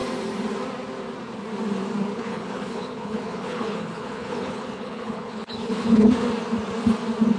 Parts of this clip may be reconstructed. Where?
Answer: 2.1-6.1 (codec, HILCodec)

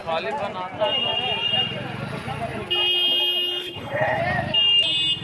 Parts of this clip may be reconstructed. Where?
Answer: 3.6-4.2 (codec, HILCodec)

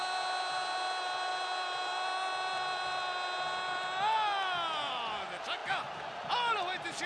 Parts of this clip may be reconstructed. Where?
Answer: none

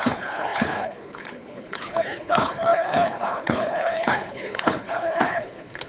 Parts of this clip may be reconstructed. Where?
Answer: 0.0-5.9 (codec, HILCodec)

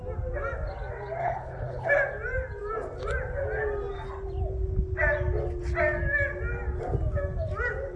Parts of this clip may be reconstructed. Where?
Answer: 1.2-1.9 (codec, HILCodec)

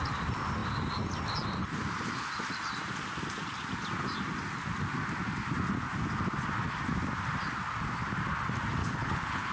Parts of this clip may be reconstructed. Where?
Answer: 8.8-9.5 (codec, HILCodec)